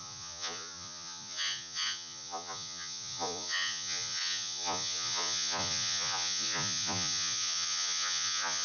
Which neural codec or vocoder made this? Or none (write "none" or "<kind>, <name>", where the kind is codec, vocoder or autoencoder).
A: vocoder, Vocos